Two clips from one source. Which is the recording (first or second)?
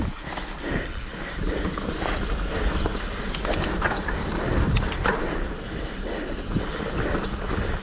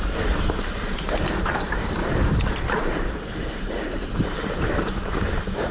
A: first